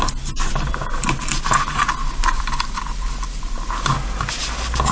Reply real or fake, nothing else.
real